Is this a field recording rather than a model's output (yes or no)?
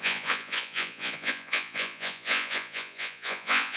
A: no